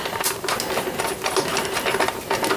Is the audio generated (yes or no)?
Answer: no